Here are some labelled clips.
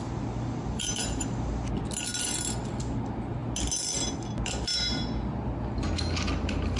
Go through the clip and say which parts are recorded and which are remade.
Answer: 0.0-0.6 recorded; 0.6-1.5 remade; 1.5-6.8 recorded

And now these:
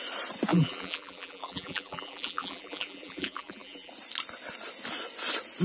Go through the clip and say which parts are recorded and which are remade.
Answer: 0.0-0.5 recorded; 0.5-3.9 remade; 3.9-5.6 recorded

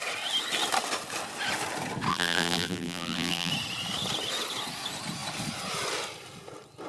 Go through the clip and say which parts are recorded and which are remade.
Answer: 0.0-2.1 recorded; 2.1-3.5 remade; 3.5-6.9 recorded

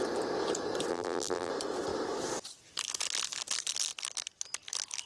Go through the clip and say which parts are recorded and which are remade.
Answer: 0.0-0.9 recorded; 0.9-1.5 remade; 1.5-5.1 recorded

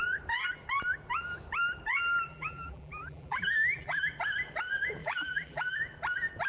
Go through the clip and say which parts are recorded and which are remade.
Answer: 0.0-2.3 recorded; 2.3-4.1 remade; 4.1-5.0 recorded; 5.0-5.8 remade; 5.8-6.5 recorded

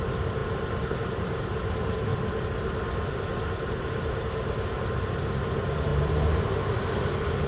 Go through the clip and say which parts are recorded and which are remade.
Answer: 0.0-2.1 recorded; 2.1-2.6 remade; 2.6-5.9 recorded; 5.9-6.8 remade; 6.8-7.5 recorded

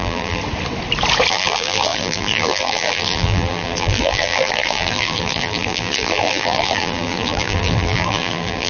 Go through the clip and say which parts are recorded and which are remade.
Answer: 0.0-0.4 remade; 0.4-1.3 recorded; 1.3-8.7 remade